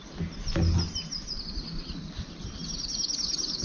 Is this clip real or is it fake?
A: real